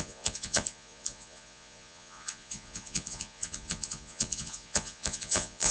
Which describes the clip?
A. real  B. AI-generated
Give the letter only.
B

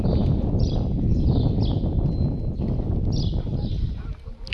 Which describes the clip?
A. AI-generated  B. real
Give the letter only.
B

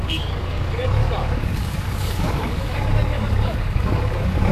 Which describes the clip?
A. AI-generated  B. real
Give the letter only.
A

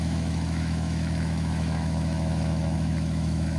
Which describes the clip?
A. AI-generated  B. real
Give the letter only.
A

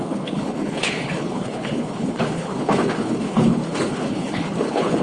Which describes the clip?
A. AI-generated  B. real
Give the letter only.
A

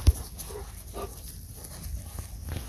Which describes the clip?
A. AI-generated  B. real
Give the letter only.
B